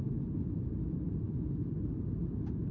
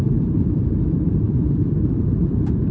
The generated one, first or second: second